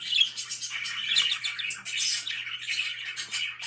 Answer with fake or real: real